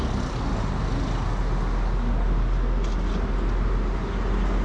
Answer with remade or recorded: recorded